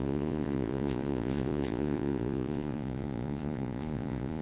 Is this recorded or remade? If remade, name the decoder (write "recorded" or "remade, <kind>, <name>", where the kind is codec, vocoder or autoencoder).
remade, vocoder, Vocos